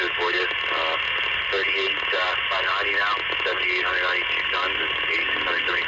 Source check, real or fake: real